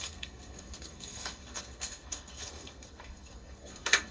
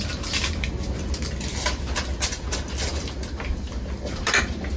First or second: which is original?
second